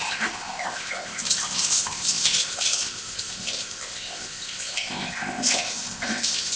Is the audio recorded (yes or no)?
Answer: no